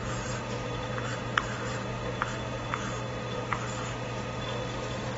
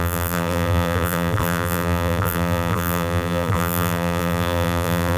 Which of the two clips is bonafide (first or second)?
first